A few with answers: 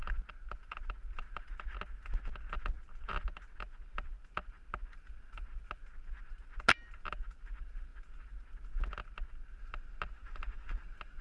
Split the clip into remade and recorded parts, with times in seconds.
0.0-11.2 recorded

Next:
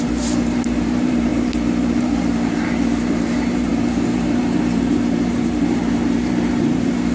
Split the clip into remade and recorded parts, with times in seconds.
0.0-7.1 remade

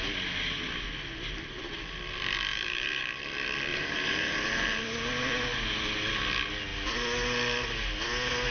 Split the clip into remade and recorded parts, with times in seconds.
0.0-2.5 recorded; 2.5-3.2 remade; 3.2-3.7 recorded; 3.7-4.8 remade; 4.8-8.5 recorded

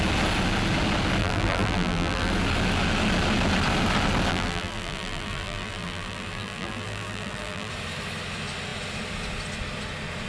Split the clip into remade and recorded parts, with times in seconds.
0.0-1.2 recorded; 1.2-2.3 remade; 2.3-4.3 recorded; 4.3-7.7 remade; 7.7-10.3 recorded

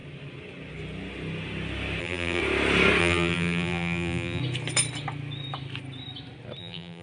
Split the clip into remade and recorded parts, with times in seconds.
0.0-2.0 recorded; 2.0-2.4 remade; 2.4-3.0 recorded; 3.0-4.4 remade; 4.4-6.6 recorded; 6.6-7.0 remade

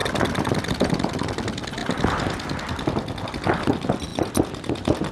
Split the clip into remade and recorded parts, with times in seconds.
0.0-1.8 recorded; 1.8-3.3 remade; 3.3-5.1 recorded